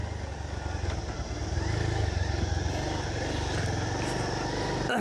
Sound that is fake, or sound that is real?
real